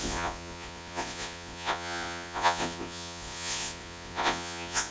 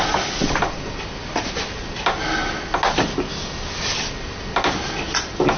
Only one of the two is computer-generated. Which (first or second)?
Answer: first